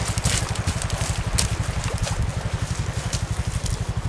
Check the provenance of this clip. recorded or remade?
recorded